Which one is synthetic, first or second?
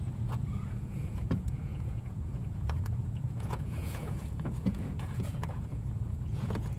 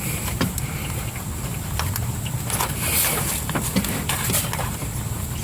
first